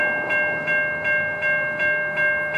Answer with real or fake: real